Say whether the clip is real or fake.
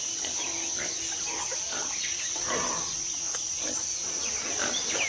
real